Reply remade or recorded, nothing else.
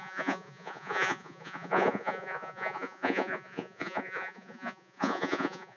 remade